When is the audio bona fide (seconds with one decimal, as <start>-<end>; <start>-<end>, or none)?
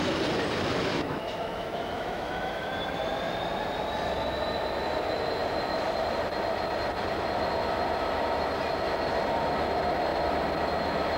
0.0-0.9; 2.7-11.2